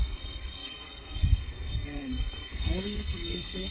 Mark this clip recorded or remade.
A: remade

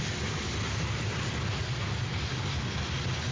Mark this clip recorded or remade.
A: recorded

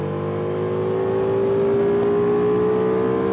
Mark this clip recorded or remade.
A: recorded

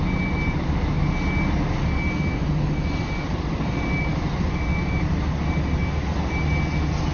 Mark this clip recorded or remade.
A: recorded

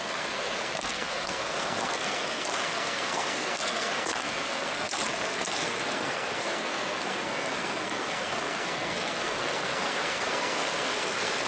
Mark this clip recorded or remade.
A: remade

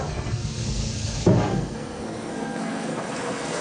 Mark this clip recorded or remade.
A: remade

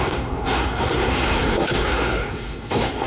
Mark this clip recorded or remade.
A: remade